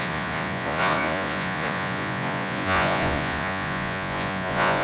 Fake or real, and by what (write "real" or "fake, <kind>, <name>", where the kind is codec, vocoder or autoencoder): fake, vocoder, Vocos